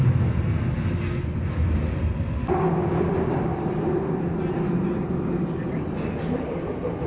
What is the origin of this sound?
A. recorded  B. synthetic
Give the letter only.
A